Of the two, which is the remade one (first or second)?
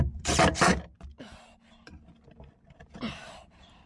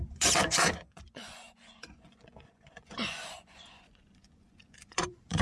second